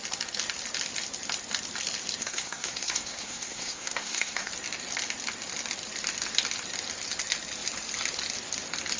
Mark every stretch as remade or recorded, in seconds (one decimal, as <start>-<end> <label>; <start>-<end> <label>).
0.0-2.2 recorded; 2.2-4.5 remade; 4.5-9.0 recorded